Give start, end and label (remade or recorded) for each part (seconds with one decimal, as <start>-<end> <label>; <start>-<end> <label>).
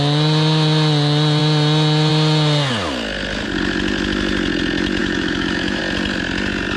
0.0-5.0 recorded; 5.0-5.8 remade; 5.8-6.8 recorded